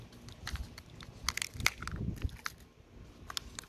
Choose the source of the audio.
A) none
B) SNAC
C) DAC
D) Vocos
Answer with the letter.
A